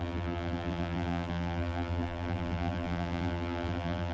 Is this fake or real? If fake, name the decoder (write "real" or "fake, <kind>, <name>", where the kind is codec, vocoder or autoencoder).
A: fake, vocoder, BigVGAN v2